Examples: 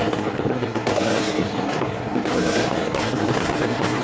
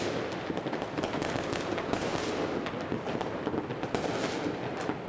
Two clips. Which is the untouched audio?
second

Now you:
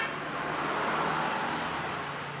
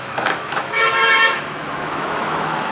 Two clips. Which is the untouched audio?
first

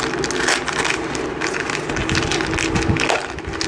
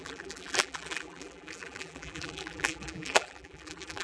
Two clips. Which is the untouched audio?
first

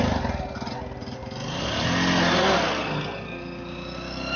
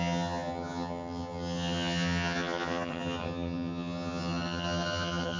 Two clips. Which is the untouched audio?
first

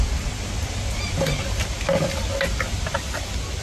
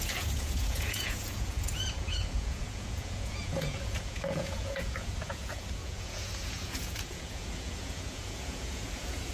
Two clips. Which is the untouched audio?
first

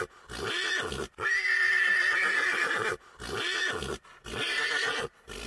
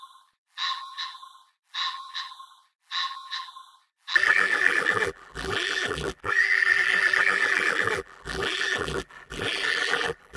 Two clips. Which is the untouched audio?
first